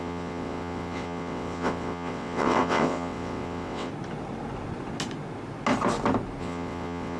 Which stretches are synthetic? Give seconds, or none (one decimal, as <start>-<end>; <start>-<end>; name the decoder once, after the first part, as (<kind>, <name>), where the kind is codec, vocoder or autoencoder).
0.0-3.9 (vocoder, WaveNeXt); 6.4-7.2